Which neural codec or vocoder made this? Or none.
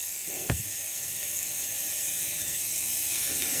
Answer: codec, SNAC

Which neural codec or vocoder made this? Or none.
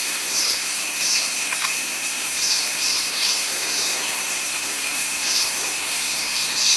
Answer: codec, SNAC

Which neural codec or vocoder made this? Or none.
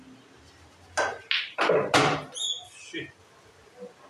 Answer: none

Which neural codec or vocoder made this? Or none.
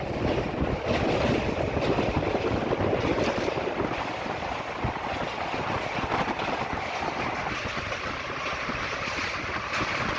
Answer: none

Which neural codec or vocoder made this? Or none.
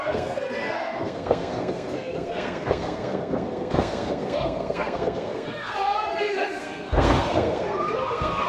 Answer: codec, SNAC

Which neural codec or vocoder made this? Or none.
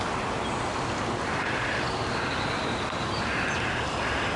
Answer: none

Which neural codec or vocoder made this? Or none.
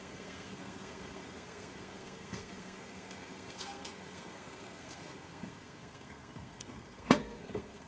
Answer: codec, SNAC